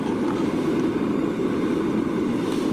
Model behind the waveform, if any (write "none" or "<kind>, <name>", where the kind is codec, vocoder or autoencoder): none